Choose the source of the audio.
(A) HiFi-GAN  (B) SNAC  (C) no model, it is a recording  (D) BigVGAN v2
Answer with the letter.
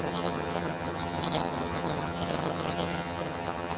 A